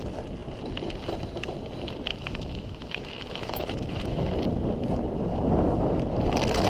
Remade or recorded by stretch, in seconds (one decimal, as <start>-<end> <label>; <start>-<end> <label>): 0.0-2.1 recorded; 2.1-4.3 remade; 4.3-5.3 recorded; 5.3-6.0 remade; 6.0-6.7 recorded